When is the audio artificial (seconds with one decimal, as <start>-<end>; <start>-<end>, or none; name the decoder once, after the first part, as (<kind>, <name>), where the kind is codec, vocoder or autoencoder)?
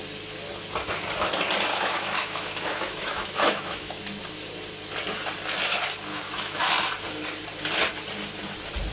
1.7-4.0 (autoencoder, DAC-VAE); 6.1-6.6